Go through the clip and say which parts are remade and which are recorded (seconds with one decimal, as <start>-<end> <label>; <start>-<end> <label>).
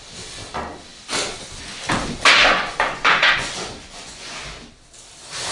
0.0-2.4 recorded; 2.4-4.4 remade; 4.4-5.5 recorded